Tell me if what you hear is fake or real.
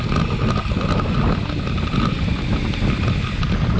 real